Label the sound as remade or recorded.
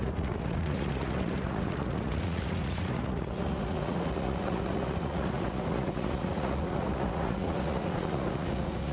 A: remade